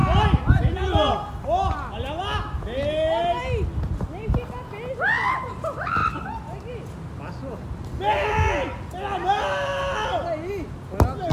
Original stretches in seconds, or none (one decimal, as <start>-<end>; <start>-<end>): 0.0-11.3